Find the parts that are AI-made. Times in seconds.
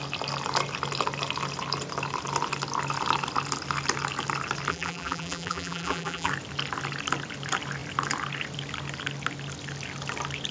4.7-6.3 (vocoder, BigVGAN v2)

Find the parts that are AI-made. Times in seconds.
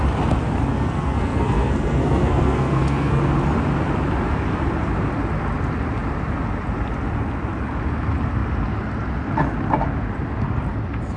0.7-3.2 (codec, SNAC)